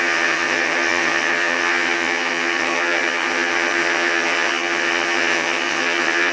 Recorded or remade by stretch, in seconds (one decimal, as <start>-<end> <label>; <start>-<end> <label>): 0.0-6.3 remade

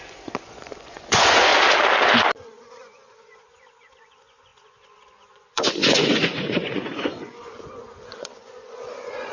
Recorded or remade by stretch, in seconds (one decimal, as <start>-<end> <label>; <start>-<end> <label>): 0.0-1.5 remade; 1.5-2.6 recorded; 2.6-9.3 remade